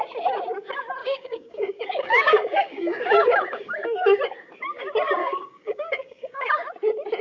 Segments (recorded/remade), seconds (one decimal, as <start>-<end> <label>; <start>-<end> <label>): 0.0-1.0 recorded; 1.0-4.2 remade; 4.2-5.2 recorded; 5.2-6.5 remade; 6.5-7.2 recorded